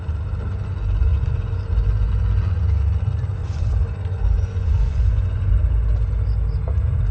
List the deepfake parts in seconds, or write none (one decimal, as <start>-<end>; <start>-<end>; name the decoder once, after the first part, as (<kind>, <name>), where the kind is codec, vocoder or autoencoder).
1.1-2.1 (vocoder, Vocos); 3.4-5.5